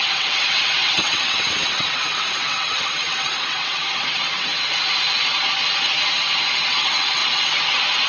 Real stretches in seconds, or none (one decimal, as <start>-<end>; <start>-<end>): 4.5-6.7; 7.2-8.1